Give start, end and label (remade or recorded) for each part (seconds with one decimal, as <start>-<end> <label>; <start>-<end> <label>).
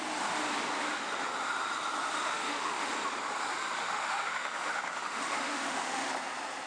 0.0-2.2 recorded; 2.2-2.9 remade; 2.9-3.8 recorded; 3.8-6.1 remade; 6.1-6.7 recorded